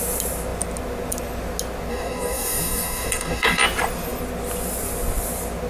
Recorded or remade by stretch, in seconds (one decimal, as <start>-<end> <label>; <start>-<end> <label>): 0.0-1.9 recorded; 1.9-3.6 remade; 3.6-5.7 recorded